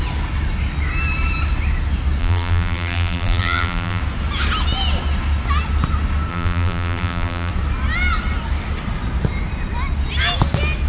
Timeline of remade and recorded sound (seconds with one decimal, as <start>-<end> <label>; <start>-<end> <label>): 0.0-2.2 recorded; 2.2-4.0 remade; 4.0-6.3 recorded; 6.3-7.5 remade; 7.5-10.9 recorded